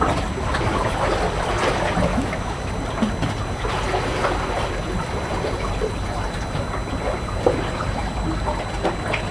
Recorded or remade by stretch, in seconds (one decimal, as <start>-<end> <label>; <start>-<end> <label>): 0.0-2.1 recorded; 2.1-2.7 remade; 2.7-9.3 recorded